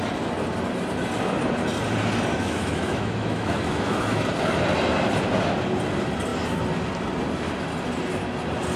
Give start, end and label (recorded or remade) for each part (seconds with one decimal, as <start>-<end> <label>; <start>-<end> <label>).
0.0-2.3 recorded; 2.3-4.2 remade; 4.2-8.8 recorded